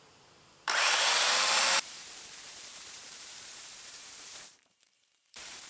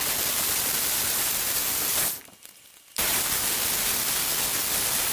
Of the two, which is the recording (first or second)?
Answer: second